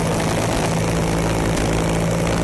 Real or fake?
real